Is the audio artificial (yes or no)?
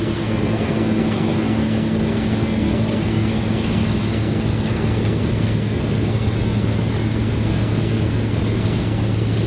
yes